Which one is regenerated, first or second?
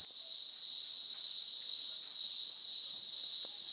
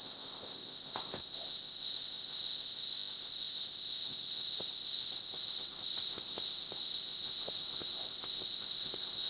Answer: second